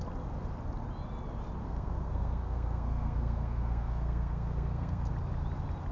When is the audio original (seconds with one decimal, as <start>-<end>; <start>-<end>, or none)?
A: 0.0-1.6; 5.1-5.9